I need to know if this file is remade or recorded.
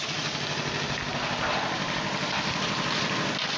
recorded